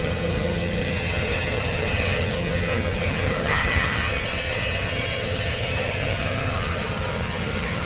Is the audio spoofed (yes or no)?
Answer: yes